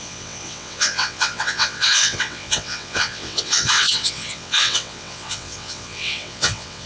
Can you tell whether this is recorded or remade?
remade